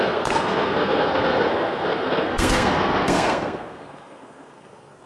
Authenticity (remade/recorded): remade